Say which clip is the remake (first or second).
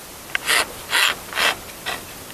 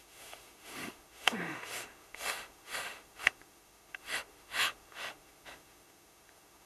second